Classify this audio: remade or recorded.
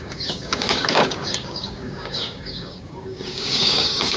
remade